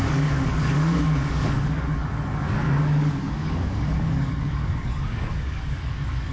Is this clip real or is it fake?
fake